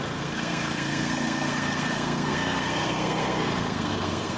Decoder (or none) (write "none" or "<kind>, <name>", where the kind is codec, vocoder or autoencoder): codec, SNAC